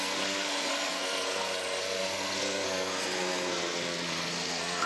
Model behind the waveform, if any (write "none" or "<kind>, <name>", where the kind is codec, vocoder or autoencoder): codec, SNAC